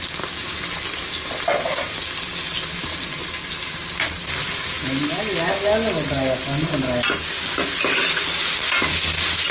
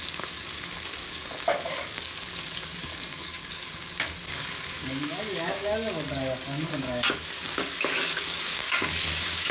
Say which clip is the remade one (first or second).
second